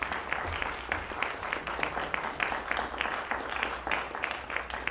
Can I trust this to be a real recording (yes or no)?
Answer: yes